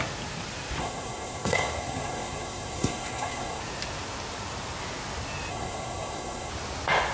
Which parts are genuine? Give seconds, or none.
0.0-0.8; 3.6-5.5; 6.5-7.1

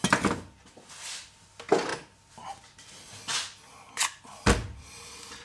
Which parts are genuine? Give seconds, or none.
0.0-5.4